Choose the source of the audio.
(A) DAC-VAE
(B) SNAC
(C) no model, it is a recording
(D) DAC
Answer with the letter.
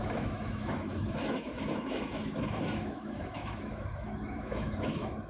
A